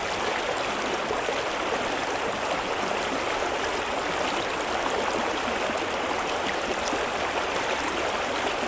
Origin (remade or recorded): recorded